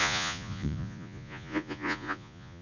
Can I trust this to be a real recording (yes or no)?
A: no